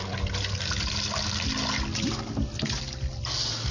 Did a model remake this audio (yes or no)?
no